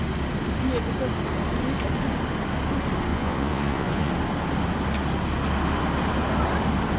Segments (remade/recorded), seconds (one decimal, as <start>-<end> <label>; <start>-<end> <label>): 0.0-3.1 recorded; 3.1-4.1 remade; 4.1-7.0 recorded